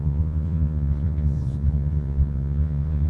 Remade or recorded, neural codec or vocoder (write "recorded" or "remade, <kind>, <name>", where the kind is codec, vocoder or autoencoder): remade, vocoder, Vocos